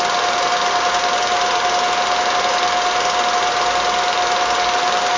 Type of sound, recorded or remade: recorded